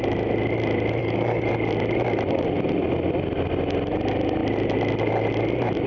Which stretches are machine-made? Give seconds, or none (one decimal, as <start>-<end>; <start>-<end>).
1.0-1.5